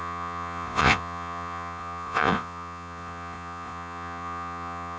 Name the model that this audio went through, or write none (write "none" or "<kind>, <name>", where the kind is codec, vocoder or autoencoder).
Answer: vocoder, Vocos